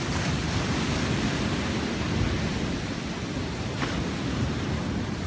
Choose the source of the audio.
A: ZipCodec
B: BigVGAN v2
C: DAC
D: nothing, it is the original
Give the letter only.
D